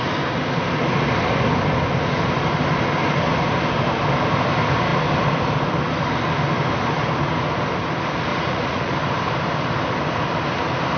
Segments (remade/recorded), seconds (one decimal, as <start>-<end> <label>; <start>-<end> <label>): 0.0-8.3 recorded; 8.3-8.9 remade; 8.9-11.0 recorded